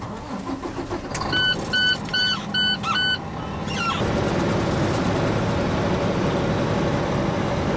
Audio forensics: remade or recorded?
recorded